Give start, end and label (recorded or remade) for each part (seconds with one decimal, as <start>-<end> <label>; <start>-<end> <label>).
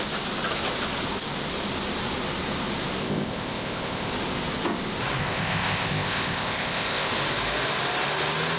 0.0-3.0 recorded; 3.0-4.1 remade; 4.1-5.2 recorded; 5.2-7.1 remade; 7.1-8.6 recorded